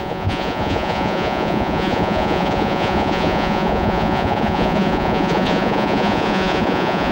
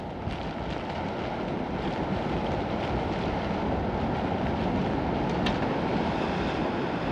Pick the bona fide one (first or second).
second